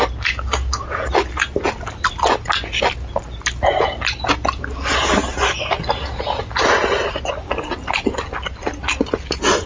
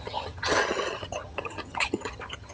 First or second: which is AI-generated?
second